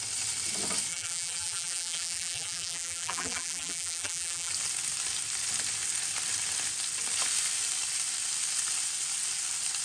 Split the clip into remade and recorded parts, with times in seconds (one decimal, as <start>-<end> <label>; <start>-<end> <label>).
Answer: 0.0-0.9 recorded; 0.9-4.5 remade; 4.5-9.8 recorded